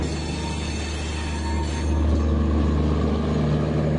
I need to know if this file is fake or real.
real